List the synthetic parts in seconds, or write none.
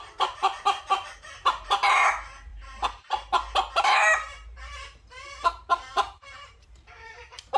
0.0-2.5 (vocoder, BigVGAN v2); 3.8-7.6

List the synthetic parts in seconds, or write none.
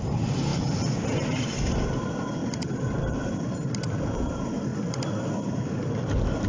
0.0-2.4 (vocoder, BigVGAN v2); 3.1-4.7; 5.4-6.5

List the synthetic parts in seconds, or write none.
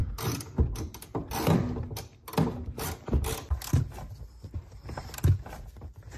4.6-5.2 (vocoder, BigVGAN v2)